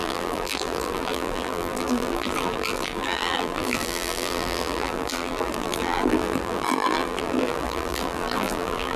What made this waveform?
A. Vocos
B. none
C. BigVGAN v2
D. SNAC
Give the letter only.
C